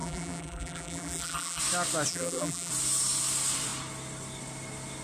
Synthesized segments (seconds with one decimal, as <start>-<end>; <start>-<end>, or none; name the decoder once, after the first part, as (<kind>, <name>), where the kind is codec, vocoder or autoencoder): 0.0-1.6 (vocoder, BigVGAN v2); 2.1-2.7